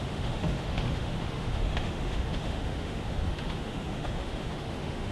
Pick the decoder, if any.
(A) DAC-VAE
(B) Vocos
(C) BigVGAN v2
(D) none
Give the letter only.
A